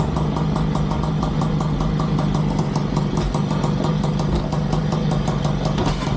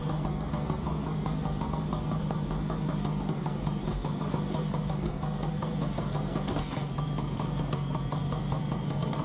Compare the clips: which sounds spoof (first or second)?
second